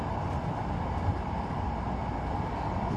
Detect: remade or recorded recorded